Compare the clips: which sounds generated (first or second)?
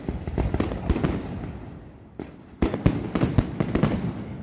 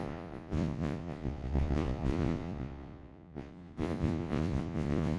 second